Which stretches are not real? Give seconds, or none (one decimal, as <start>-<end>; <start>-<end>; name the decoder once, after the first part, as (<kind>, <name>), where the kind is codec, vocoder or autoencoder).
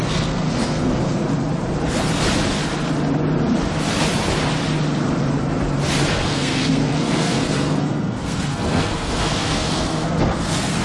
0.0-1.2 (codec, SNAC); 6.1-10.8